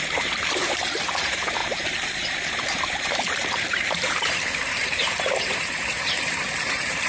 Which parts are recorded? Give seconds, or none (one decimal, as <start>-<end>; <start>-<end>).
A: none